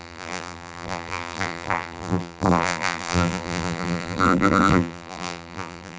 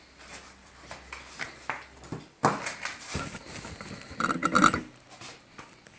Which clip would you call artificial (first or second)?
first